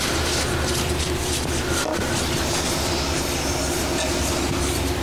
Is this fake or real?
real